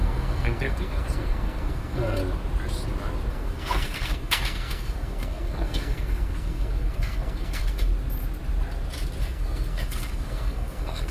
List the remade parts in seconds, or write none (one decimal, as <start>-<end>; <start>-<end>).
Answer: 0.0-2.2; 3.3-7.9; 9.2-11.1